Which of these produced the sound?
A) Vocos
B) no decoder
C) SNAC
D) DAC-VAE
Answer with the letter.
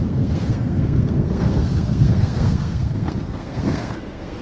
C